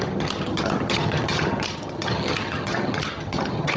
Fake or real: fake